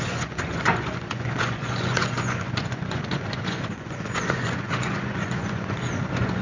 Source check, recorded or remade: remade